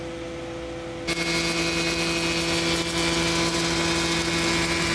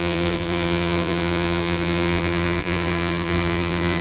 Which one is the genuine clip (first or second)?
first